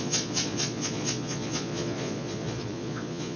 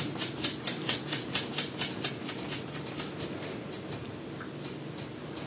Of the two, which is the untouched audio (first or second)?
second